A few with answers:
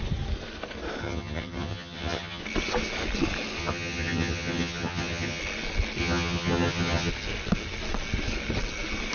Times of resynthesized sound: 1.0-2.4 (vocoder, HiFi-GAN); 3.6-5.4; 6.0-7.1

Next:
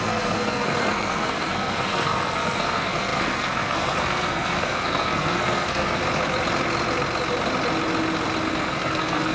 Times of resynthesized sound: 0.0-6.0 (codec, SNAC); 8.5-9.3

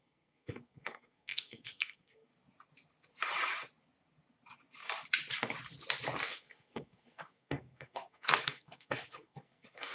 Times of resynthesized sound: 0.0-2.3 (codec, SNAC); 6.3-9.9